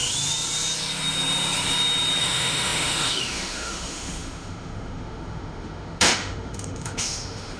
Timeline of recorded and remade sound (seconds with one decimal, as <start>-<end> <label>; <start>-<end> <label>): 0.0-2.2 recorded; 2.2-7.6 remade